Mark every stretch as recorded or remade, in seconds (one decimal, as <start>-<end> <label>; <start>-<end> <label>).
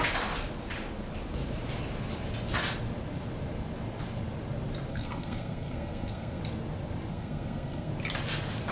0.0-4.9 recorded; 4.9-6.4 remade; 6.4-7.1 recorded; 7.1-7.9 remade; 7.9-8.7 recorded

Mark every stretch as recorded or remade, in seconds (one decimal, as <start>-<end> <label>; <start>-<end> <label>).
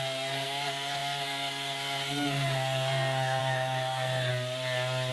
0.0-4.3 remade; 4.3-5.1 recorded